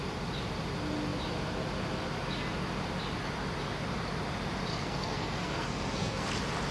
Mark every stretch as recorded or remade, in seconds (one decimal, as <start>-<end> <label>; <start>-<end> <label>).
0.0-4.7 recorded; 4.7-6.3 remade; 6.3-6.7 recorded